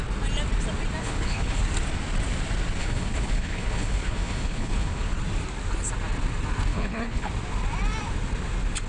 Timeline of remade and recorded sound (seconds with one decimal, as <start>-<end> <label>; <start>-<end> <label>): 0.0-1.0 recorded; 1.0-1.6 remade; 1.6-2.8 recorded; 2.8-5.1 remade; 5.1-6.7 recorded; 6.7-7.3 remade; 7.3-8.9 recorded